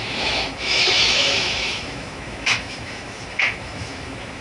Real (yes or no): no